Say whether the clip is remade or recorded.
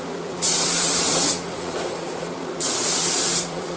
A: remade